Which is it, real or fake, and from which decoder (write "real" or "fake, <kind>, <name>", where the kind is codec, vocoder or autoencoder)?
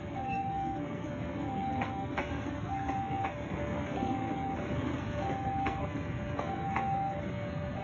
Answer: fake, codec, SNAC